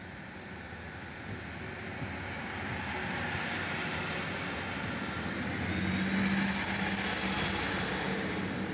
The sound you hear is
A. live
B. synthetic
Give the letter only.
A